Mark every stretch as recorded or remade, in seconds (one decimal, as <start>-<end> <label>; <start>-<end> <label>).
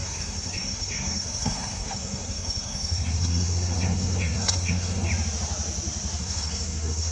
0.0-5.1 remade; 5.1-6.2 recorded; 6.2-7.1 remade